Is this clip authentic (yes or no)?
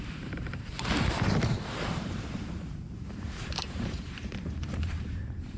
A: no